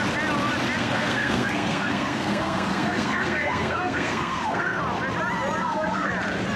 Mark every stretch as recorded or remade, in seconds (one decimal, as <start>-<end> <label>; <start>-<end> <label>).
0.0-0.8 recorded; 0.8-4.8 remade; 4.8-5.6 recorded; 5.6-6.1 remade; 6.1-6.6 recorded